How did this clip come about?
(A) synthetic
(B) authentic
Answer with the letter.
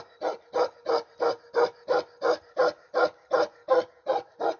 B